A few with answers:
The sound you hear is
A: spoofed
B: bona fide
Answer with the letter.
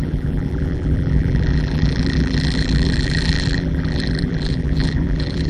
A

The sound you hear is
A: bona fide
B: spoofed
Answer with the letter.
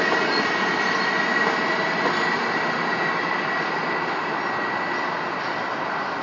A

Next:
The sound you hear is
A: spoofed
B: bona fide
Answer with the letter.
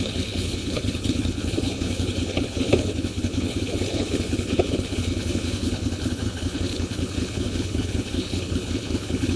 A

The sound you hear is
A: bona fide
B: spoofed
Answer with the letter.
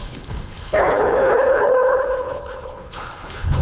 B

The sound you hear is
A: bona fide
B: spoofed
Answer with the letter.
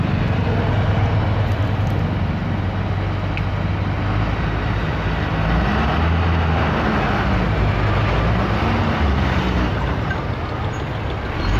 A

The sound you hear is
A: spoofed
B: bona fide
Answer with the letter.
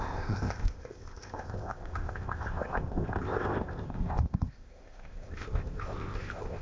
A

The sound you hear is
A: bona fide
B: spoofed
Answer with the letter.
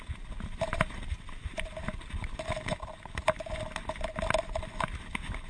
A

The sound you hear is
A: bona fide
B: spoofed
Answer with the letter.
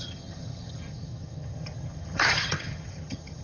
B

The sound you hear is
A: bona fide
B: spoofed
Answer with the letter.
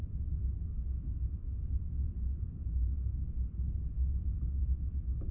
A